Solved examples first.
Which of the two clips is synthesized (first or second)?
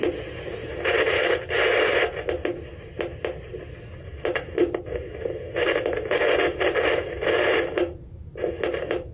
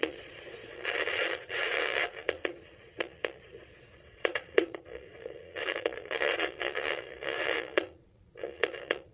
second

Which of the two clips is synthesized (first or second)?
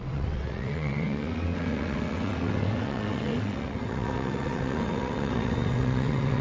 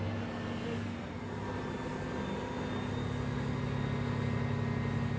first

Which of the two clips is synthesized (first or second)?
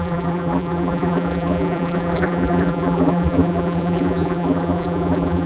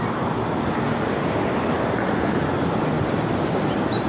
first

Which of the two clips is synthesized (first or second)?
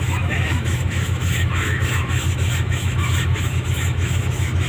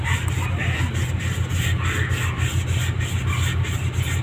first